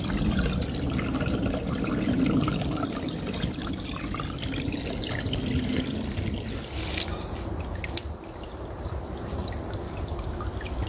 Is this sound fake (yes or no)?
no